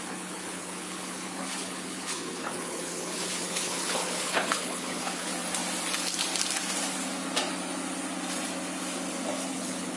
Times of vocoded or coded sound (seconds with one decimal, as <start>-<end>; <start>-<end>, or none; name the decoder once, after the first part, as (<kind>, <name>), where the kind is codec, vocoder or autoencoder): 0.0-5.3 (codec, HILCodec); 9.5-10.0